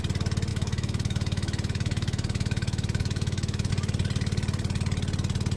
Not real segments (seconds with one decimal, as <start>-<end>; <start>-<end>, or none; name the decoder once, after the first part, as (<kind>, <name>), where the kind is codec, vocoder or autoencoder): 0.5-3.7 (autoencoder, DAC-VAE)